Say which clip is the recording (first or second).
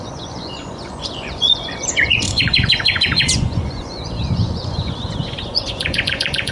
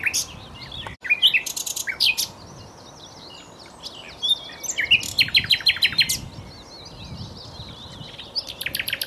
second